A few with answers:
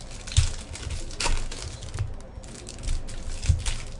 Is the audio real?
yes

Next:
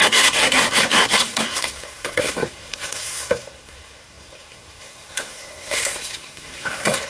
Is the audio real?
no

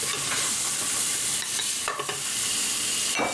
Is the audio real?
yes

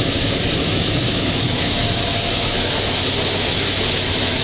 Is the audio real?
no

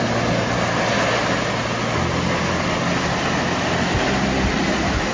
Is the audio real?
yes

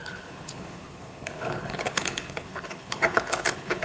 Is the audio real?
no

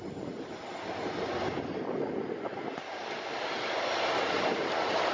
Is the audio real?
yes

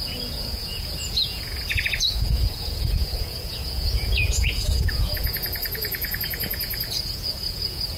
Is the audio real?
no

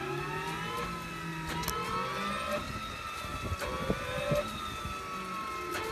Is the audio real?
yes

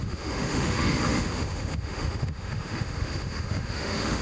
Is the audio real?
no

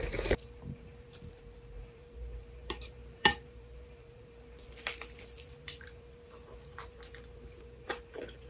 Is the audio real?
no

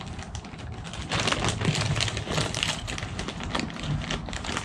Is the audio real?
yes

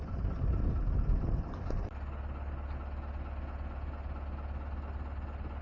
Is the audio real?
yes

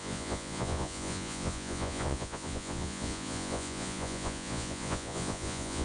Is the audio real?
no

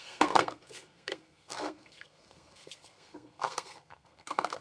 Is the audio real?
no